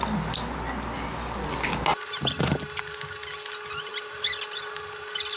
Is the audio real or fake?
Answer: real